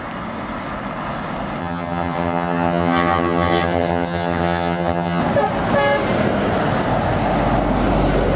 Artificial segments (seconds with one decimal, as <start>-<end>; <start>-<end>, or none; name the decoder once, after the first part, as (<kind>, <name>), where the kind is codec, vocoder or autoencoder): 1.6-5.2 (vocoder, HiFi-GAN)